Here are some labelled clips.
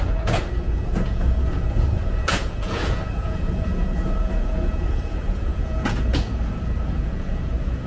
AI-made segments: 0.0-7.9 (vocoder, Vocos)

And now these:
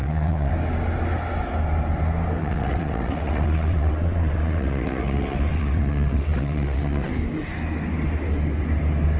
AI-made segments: 0.0-0.5 (vocoder, WaveNeXt); 2.4-7.1

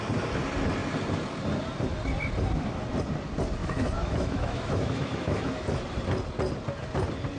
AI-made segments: 3.6-5.8 (autoencoder, DAC-VAE)

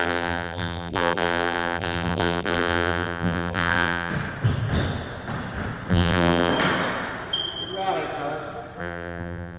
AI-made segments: 0.0-4.1 (vocoder, BigVGAN v2); 5.9-6.5; 8.8-9.6